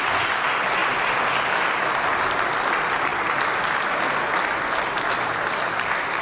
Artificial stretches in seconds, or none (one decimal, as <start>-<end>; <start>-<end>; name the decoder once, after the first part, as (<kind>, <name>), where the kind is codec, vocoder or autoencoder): none